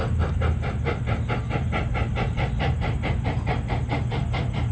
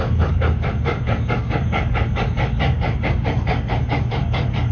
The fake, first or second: second